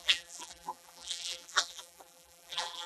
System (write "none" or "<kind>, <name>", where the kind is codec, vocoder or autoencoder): vocoder, BigVGAN v2